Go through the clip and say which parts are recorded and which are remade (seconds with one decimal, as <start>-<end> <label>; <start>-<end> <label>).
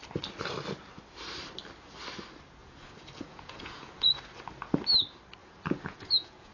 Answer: 0.0-2.6 recorded; 2.6-4.1 remade; 4.1-5.4 recorded; 5.4-6.5 remade